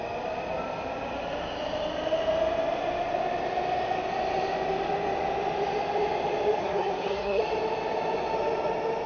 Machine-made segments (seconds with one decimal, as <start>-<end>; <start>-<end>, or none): 6.6-7.4